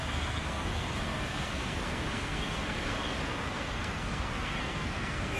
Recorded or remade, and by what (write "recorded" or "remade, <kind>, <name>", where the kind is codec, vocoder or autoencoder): remade, codec, SNAC